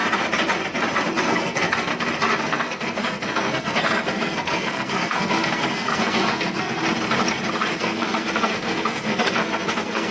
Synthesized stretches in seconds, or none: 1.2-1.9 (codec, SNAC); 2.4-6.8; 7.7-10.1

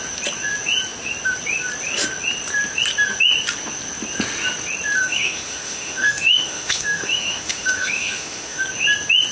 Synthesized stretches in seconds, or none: 5.0-8.6 (autoencoder, DAC-VAE)

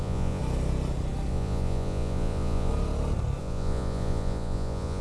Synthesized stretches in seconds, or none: 0.0-0.4 (vocoder, Vocos); 1.3-2.7; 3.4-5.0

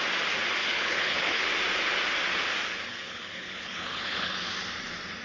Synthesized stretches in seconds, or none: 0.6-1.5 (codec, HILCodec); 2.9-4.4

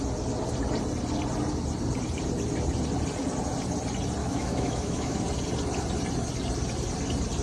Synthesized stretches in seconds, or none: 4.2-5.2 (autoencoder, DAC-VAE)

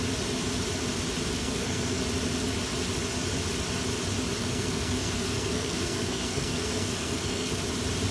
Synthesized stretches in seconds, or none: 1.4-2.0 (codec, SNAC); 4.4-7.6